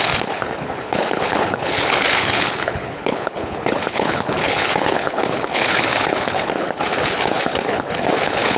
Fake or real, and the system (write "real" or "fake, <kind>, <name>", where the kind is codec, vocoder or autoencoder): fake, codec, HILCodec